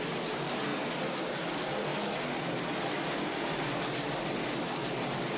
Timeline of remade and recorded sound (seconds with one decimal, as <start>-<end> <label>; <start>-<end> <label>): 0.0-5.4 recorded